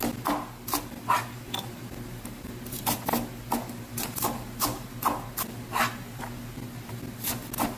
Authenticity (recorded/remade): recorded